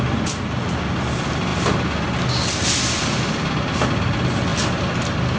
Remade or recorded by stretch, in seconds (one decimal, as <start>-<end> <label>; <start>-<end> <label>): 0.0-5.4 recorded

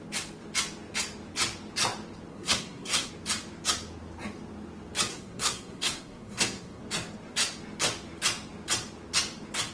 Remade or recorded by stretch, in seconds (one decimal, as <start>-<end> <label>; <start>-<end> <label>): 0.0-2.3 recorded; 2.3-3.1 remade; 3.1-5.1 recorded; 5.1-6.8 remade; 6.8-9.7 recorded